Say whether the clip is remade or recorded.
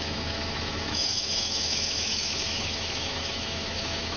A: remade